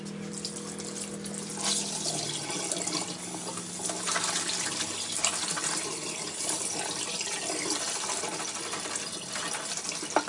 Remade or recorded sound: recorded